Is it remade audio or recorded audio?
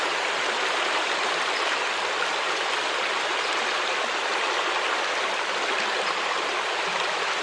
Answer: recorded